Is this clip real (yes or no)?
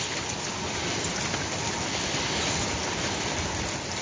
yes